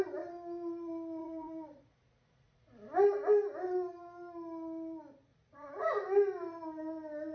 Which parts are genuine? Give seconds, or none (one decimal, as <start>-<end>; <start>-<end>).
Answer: 0.0-1.2; 2.6-5.3; 5.9-7.3